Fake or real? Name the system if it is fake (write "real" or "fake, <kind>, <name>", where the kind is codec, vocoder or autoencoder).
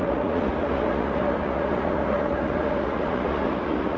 fake, vocoder, Vocos